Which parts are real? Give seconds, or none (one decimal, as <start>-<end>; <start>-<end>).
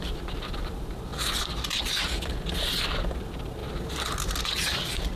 1.1-1.7; 3.6-4.4